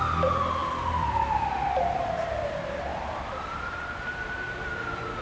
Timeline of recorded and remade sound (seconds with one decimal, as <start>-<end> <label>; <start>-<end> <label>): 0.0-2.9 recorded; 2.9-4.8 remade; 4.8-5.2 recorded